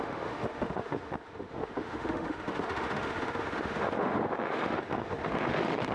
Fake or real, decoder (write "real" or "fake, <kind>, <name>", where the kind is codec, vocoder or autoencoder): fake, autoencoder, DAC-VAE